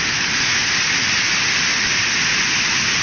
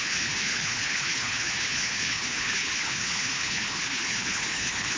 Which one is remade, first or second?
second